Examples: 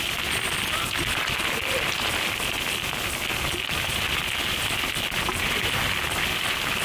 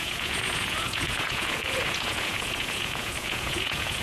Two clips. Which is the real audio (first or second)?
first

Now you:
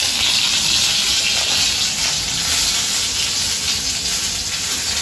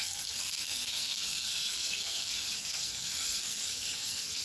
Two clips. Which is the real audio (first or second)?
first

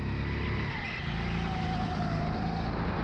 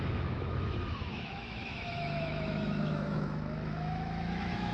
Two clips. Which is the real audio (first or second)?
first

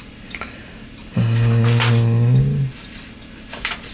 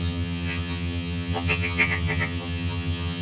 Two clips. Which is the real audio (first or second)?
first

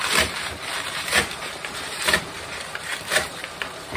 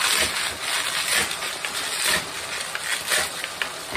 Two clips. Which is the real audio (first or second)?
second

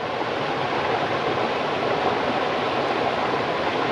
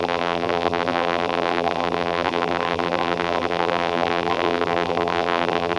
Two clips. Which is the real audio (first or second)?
first